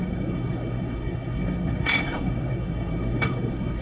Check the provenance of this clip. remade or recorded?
remade